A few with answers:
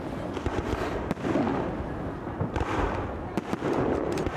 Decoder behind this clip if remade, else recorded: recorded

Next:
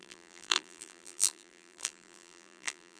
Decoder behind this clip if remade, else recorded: remade, vocoder, BigVGAN v2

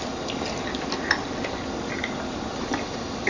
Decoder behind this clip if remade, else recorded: recorded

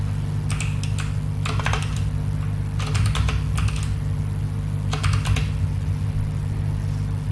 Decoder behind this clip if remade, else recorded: recorded